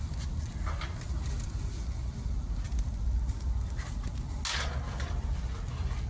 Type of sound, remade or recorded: recorded